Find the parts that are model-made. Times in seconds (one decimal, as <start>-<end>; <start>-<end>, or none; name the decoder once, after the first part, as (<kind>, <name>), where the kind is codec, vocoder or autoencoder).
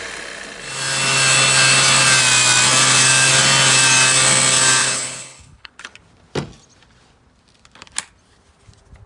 4.8-5.7 (codec, HILCodec)